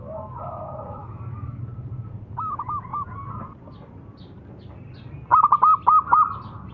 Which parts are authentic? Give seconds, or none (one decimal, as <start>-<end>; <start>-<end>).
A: 0.0-1.0; 1.6-6.7